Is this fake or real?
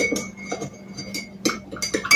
real